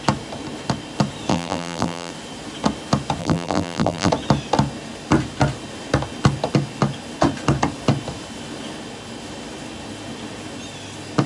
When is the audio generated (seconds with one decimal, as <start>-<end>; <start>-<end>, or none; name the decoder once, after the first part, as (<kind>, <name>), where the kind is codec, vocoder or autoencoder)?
1.3-2.1 (vocoder, BigVGAN v2); 3.2-4.1